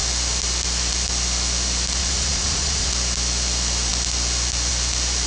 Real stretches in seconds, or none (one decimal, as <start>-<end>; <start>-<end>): 0.0-2.0; 2.9-5.3